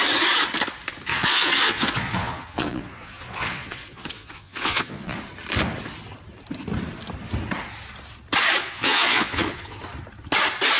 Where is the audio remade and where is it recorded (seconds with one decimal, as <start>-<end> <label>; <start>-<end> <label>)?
0.0-1.1 recorded; 1.1-5.2 remade; 5.2-8.6 recorded; 8.6-9.8 remade; 9.8-10.8 recorded